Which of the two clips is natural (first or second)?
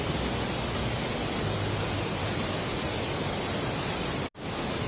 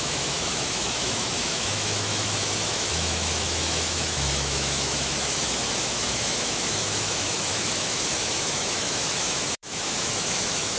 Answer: first